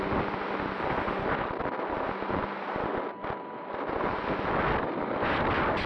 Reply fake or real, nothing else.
real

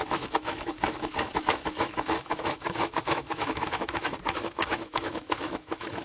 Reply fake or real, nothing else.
fake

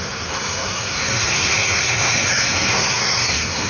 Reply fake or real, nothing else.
fake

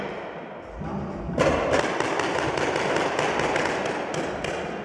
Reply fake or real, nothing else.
real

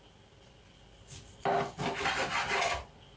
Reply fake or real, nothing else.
real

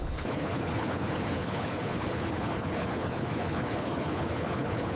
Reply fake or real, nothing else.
fake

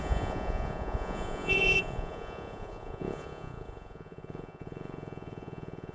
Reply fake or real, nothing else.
fake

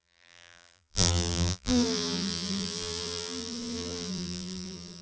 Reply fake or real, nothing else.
fake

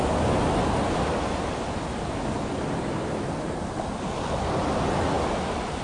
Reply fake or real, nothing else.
real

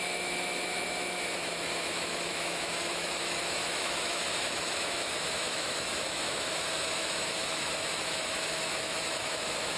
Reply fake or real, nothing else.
fake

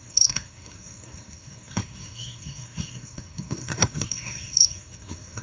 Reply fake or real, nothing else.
fake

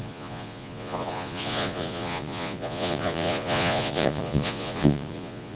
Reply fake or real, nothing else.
fake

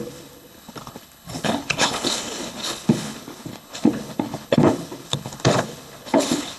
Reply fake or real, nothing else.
fake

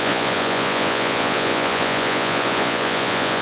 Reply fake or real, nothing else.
fake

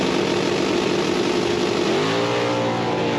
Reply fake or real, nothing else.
real